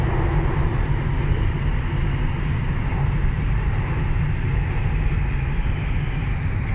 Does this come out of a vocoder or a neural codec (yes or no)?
no